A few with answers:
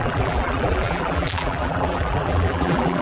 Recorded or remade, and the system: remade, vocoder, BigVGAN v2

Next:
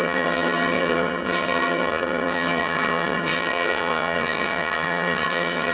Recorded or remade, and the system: remade, vocoder, HiFi-GAN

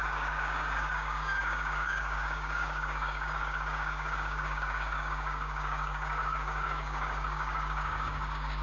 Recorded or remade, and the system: remade, codec, DAC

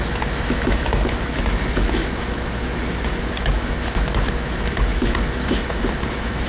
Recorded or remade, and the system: remade, autoencoder, DAC-VAE